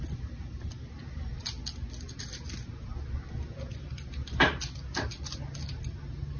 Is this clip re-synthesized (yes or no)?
no